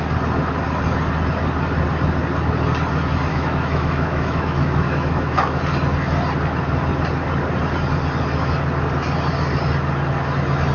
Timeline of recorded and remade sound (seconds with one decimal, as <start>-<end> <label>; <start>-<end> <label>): 0.0-3.3 recorded; 3.3-5.6 remade; 5.6-10.7 recorded